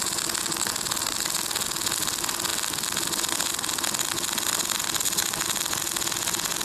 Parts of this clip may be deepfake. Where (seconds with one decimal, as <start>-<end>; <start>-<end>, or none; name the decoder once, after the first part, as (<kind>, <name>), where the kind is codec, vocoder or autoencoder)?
none